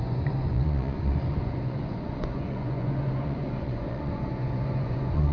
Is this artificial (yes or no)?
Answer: yes